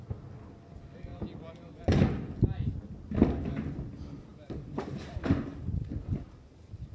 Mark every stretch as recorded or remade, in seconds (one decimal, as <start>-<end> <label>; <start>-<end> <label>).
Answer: 0.0-4.3 recorded; 4.3-5.1 remade; 5.1-6.9 recorded